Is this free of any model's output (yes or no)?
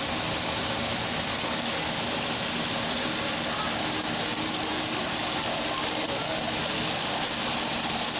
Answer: yes